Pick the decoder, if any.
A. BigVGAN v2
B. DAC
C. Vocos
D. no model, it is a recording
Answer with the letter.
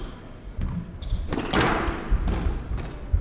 D